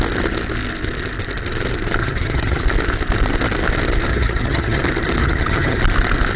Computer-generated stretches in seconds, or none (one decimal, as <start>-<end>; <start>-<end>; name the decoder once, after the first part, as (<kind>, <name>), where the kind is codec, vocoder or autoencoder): 2.0-2.6 (vocoder, HiFi-GAN); 4.1-4.8; 5.2-5.8